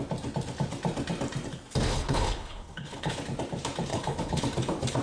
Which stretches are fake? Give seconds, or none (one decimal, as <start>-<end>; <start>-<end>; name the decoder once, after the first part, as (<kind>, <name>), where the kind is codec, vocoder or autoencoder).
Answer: 1.9-3.2 (codec, HILCodec); 3.9-4.4